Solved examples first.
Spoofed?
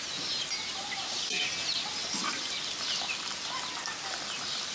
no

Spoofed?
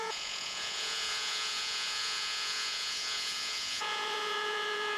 yes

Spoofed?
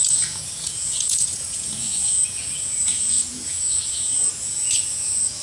yes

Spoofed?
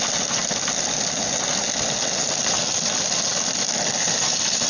no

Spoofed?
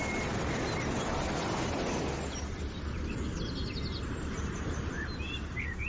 no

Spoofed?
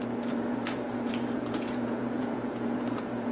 yes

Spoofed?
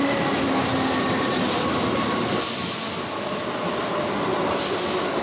no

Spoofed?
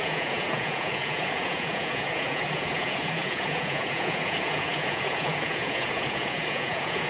yes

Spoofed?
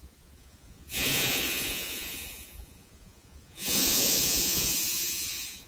yes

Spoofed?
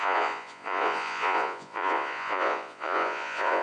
yes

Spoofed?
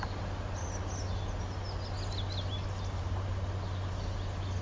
no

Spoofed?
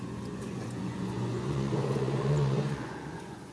yes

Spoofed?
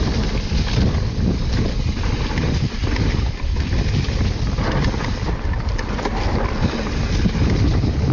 no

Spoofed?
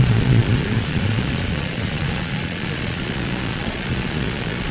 yes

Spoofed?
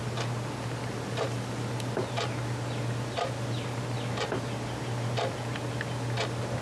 no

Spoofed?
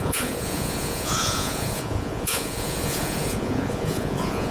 yes